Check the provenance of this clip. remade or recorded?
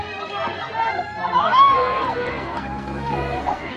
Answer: remade